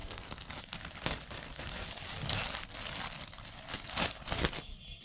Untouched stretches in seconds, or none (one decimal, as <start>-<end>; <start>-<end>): 0.5-5.0